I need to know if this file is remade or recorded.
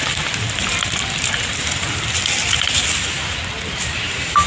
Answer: recorded